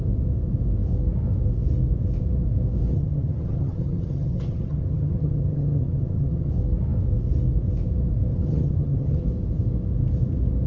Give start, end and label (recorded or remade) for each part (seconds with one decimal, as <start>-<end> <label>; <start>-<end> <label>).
0.0-2.9 recorded; 2.9-6.5 remade; 6.5-8.3 recorded; 8.3-9.2 remade; 9.2-10.7 recorded